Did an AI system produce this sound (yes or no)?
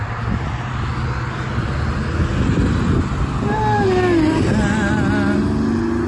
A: no